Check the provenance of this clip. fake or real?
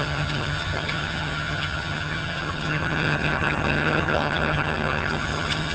fake